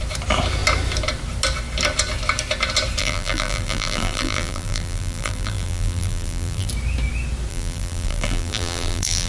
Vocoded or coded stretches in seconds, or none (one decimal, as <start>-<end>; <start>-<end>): 3.0-6.7; 7.5-9.3